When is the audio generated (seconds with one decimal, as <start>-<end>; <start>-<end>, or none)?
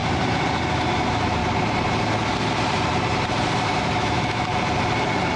0.9-1.4; 3.8-4.5